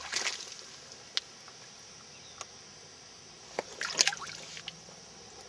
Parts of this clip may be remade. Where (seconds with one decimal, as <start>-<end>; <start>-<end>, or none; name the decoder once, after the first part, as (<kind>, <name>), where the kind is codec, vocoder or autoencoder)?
3.4-3.9 (vocoder, BigVGAN v2)